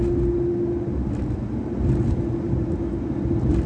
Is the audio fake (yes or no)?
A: no